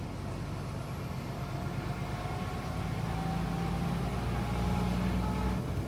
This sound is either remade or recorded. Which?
recorded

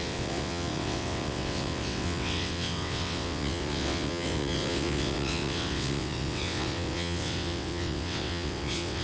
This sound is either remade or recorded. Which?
remade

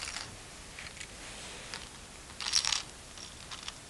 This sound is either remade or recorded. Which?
recorded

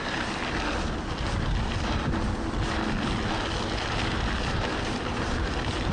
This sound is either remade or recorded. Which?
recorded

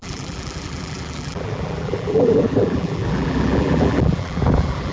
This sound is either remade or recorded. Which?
remade